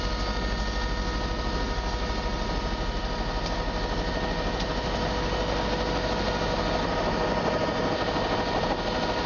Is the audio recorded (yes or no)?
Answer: yes